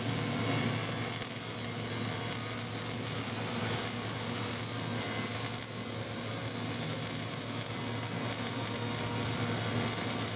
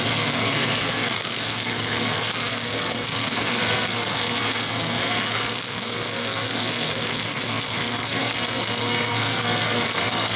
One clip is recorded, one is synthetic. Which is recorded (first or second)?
first